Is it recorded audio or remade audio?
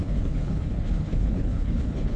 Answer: remade